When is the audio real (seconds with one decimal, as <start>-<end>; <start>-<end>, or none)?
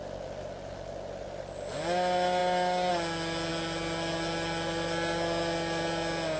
0.0-6.4